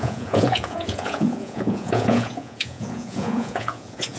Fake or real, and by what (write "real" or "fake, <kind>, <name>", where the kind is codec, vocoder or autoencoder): fake, vocoder, Vocos